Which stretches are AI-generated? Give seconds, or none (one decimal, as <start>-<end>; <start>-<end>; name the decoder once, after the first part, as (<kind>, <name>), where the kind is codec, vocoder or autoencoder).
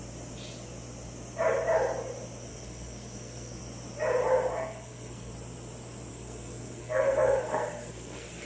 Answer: 2.5-3.6 (codec, SNAC); 4.6-5.3; 6.1-8.5